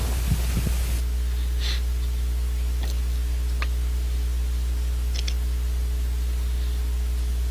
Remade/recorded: recorded